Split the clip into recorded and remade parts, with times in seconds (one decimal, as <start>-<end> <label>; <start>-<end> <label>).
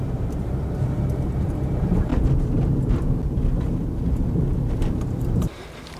0.0-2.1 remade; 2.1-4.7 recorded; 4.7-6.0 remade